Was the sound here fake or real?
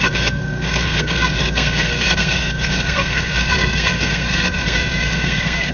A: fake